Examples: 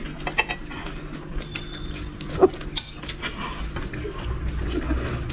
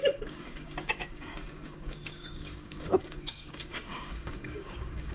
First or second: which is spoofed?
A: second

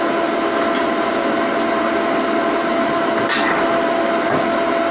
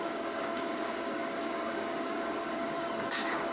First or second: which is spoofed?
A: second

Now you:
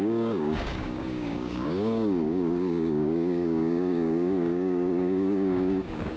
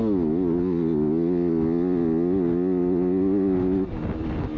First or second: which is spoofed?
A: first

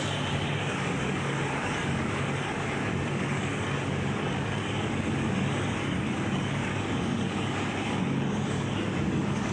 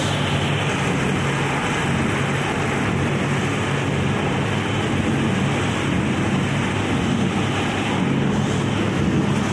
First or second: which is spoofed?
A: first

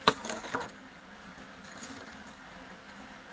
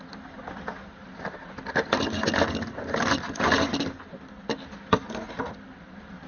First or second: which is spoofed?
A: first